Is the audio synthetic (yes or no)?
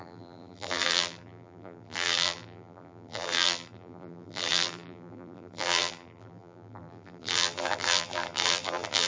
yes